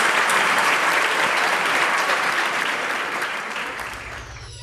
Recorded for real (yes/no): no